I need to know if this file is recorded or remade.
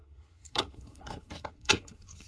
remade